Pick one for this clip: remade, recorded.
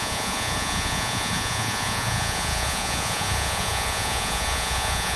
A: remade